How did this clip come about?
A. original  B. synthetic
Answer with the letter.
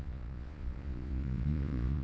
B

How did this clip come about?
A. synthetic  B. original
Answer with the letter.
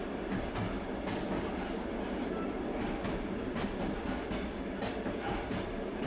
B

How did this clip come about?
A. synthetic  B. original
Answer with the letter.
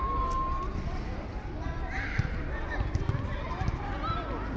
B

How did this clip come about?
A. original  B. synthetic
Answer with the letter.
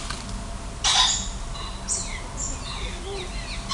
A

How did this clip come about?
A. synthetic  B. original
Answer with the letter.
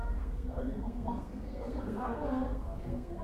A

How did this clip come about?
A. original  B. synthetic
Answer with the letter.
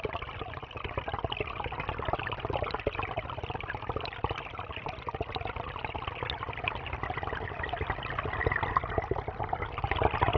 A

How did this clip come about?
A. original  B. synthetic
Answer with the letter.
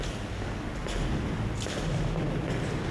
A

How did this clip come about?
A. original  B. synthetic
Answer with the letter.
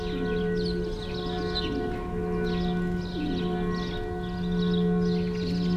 A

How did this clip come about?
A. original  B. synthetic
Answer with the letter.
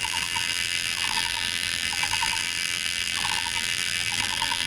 B